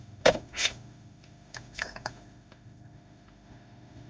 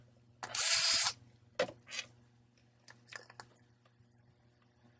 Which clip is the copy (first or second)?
first